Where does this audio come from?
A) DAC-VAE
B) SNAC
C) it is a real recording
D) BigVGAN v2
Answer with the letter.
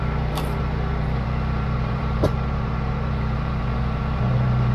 D